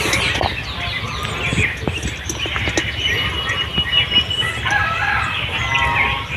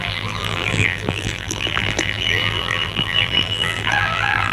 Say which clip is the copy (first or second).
second